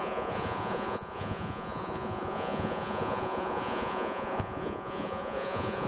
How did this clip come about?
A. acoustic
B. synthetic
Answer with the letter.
B